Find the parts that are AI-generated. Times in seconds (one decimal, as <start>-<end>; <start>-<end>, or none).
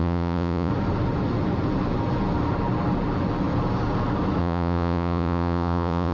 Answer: 0.0-0.7; 4.4-6.1